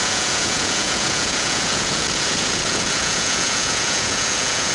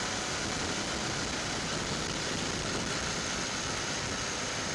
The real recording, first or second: second